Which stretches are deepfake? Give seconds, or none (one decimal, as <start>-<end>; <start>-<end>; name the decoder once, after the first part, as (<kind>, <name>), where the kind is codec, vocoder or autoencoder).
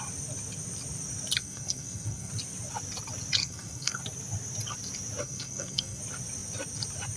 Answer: 1.4-2.3 (codec, SNAC); 3.4-4.0; 5.2-6.0